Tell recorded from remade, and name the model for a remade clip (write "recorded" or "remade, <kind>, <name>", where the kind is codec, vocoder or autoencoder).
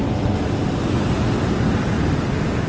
recorded